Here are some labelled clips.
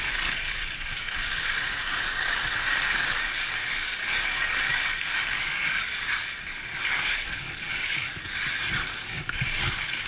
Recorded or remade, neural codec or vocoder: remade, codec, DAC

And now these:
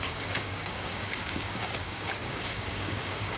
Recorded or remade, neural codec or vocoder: remade, codec, DAC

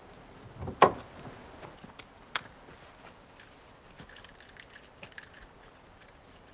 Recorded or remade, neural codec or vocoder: recorded